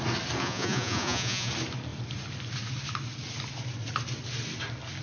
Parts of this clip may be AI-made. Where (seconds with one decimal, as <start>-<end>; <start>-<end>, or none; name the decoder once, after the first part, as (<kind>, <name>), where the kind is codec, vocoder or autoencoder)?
0.4-1.5 (vocoder, Vocos)